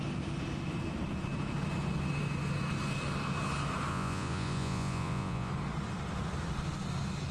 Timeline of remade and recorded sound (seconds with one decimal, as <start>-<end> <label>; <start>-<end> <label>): 0.0-3.9 recorded; 3.9-5.5 remade; 5.5-7.3 recorded